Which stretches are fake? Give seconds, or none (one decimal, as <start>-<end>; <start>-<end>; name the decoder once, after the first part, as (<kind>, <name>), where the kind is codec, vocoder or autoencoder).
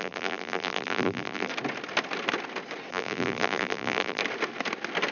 0.0-1.5 (vocoder, BigVGAN v2); 2.9-4.2